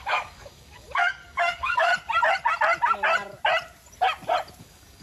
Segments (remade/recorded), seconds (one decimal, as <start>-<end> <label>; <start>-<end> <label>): 0.0-1.9 remade; 1.9-4.6 recorded; 4.6-5.0 remade